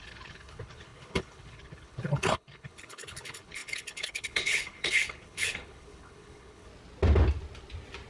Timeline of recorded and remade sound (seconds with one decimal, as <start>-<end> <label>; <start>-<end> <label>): 0.0-6.7 remade; 6.7-8.1 recorded